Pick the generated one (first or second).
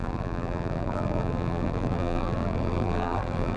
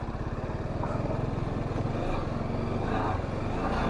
first